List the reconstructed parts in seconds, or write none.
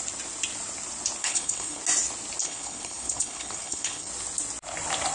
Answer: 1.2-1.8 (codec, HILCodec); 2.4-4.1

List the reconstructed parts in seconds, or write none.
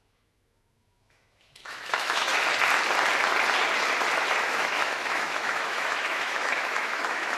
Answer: 0.0-2.3 (autoencoder, DAC-VAE); 4.4-7.4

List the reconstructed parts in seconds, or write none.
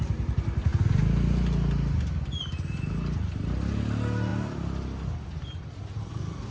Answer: none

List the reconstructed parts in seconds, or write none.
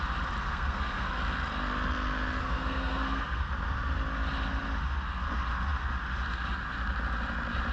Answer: 0.4-1.1 (codec, SNAC); 2.4-3.5